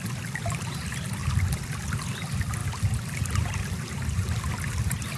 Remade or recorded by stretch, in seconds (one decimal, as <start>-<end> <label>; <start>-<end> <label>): 0.0-5.2 recorded